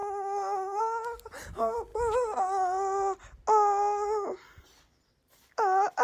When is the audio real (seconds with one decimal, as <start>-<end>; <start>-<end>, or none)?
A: 0.8-6.0